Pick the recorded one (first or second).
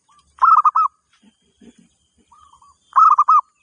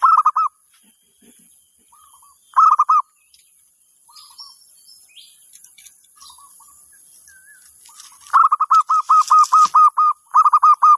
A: second